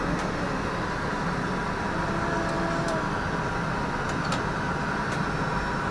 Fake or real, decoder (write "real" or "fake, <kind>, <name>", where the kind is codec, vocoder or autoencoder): real